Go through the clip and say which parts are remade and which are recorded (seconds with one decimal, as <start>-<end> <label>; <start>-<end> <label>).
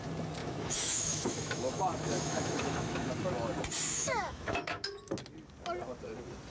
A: 0.0-0.4 recorded; 0.4-3.1 remade; 3.1-3.9 recorded; 3.9-5.1 remade; 5.1-6.5 recorded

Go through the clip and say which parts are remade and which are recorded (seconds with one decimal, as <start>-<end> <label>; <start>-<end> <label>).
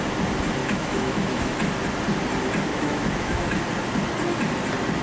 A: 0.0-0.6 recorded; 0.6-1.5 remade; 1.5-2.7 recorded; 2.7-3.6 remade; 3.6-5.0 recorded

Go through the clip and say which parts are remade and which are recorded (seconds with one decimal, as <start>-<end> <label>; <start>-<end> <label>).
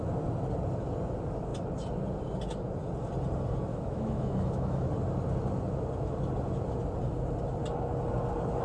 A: 0.0-3.7 recorded; 3.7-4.9 remade; 4.9-8.6 recorded